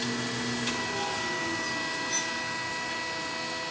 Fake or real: real